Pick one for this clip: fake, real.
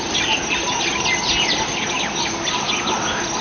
real